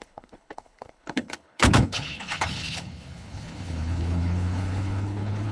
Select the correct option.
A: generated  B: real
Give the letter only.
A